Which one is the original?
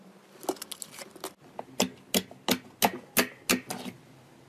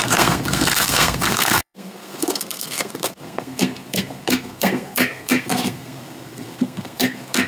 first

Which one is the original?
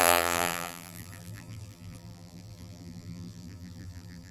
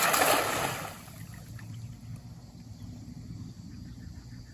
second